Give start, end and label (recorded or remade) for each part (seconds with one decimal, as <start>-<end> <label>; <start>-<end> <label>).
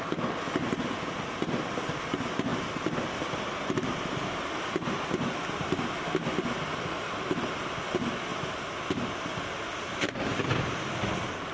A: 0.0-11.5 recorded